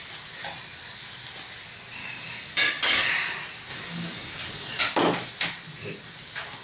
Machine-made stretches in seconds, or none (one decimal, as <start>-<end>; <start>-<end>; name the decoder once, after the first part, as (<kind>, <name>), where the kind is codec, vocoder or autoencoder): 2.0-3.1 (codec, DAC); 3.7-4.8

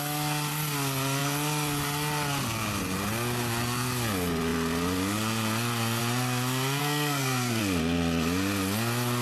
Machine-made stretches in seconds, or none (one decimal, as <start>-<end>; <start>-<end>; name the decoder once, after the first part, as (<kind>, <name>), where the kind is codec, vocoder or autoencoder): 6.8-7.6 (codec, SNAC)

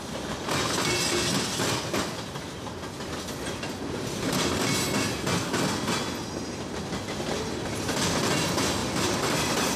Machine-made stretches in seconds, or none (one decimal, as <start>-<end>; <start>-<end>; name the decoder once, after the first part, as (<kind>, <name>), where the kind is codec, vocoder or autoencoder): none

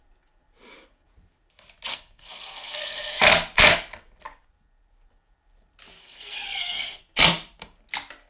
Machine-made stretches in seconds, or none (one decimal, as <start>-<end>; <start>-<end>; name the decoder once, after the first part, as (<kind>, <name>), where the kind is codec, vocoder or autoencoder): 1.9-3.2 (codec, SNAC); 6.0-7.0

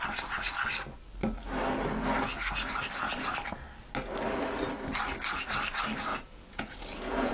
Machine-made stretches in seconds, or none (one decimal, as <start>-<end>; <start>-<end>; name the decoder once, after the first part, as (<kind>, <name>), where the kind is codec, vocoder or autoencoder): 6.1-7.3 (vocoder, Vocos)

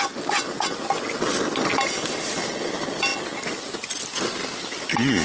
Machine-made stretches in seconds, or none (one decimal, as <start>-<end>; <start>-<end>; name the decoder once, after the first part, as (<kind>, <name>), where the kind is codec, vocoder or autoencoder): none